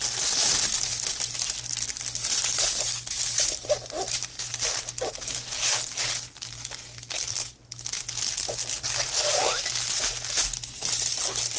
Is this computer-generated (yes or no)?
no